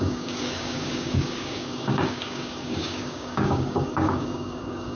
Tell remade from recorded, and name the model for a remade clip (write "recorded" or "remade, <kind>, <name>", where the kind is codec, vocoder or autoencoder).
remade, codec, DAC